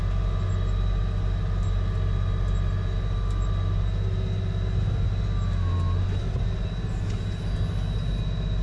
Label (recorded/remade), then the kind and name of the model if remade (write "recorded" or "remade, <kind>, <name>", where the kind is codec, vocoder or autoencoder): recorded